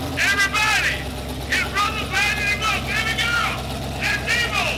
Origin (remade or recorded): recorded